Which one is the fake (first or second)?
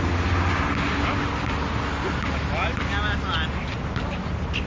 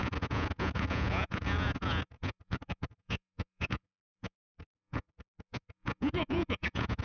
second